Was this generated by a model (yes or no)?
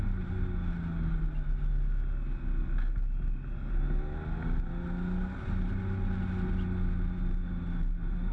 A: no